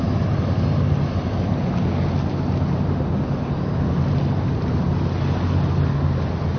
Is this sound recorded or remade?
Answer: recorded